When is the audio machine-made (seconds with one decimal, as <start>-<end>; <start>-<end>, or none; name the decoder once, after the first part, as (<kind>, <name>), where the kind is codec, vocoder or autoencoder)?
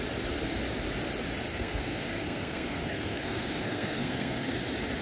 1.5-4.5 (codec, SNAC)